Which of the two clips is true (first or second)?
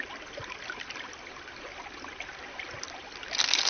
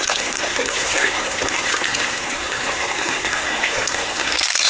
first